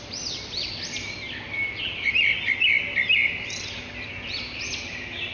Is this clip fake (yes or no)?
no